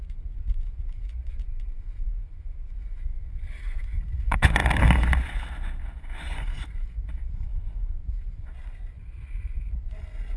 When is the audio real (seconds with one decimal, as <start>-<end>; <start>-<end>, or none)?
4.6-5.8